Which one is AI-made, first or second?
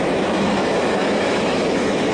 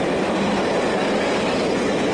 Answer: first